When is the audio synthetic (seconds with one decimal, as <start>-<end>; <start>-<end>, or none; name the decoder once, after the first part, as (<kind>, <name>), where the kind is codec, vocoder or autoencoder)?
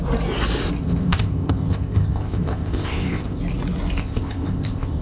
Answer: 0.8-3.4 (codec, ZipCodec); 4.0-5.0